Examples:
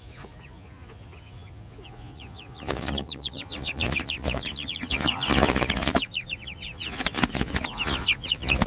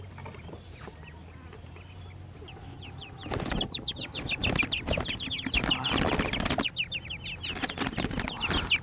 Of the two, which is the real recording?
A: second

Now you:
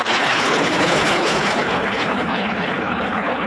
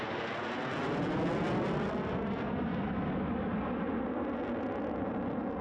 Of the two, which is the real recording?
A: second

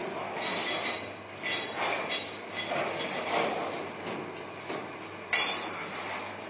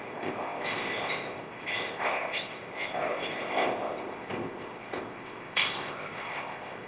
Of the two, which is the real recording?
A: first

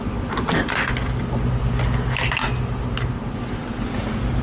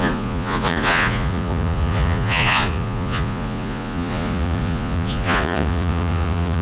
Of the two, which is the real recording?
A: first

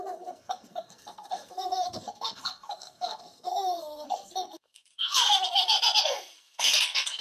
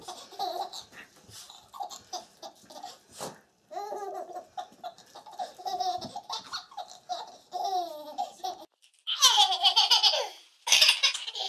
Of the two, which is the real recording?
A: second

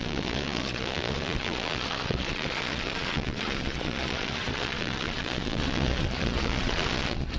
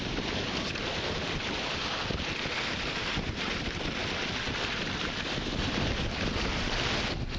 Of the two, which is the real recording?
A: second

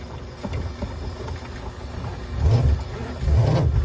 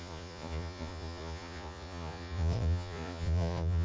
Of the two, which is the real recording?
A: first